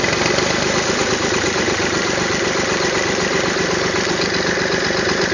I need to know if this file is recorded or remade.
remade